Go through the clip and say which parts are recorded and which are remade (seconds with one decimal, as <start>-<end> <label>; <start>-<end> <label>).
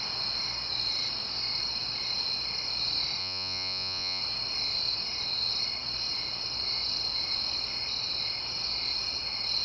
0.0-3.2 recorded; 3.2-4.2 remade; 4.2-9.6 recorded